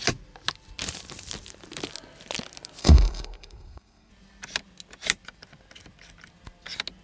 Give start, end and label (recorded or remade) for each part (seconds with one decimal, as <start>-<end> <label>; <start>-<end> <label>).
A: 0.0-2.8 recorded; 2.8-4.1 remade; 4.1-7.0 recorded